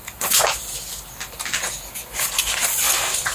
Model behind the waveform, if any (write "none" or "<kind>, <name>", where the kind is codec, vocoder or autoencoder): none